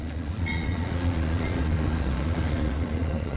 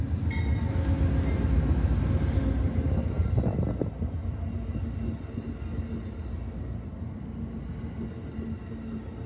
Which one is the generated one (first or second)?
first